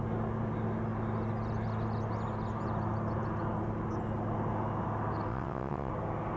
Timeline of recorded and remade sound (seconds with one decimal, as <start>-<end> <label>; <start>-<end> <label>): 0.0-5.3 recorded; 5.3-5.9 remade; 5.9-6.4 recorded